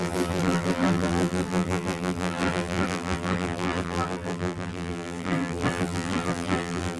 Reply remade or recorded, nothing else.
remade